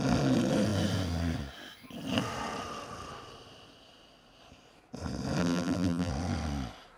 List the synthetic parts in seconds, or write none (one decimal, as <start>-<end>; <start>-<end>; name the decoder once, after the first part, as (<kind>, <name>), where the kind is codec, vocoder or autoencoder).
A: 5.4-6.1 (vocoder, BigVGAN v2)